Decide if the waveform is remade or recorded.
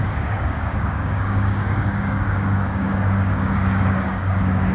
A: remade